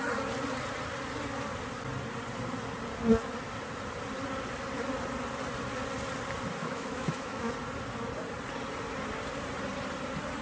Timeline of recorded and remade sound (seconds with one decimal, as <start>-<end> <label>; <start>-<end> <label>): 0.0-6.6 recorded; 6.6-7.5 remade; 7.5-10.4 recorded